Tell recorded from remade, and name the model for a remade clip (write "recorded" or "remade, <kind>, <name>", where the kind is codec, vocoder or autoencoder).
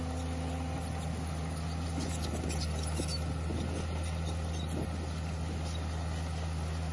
recorded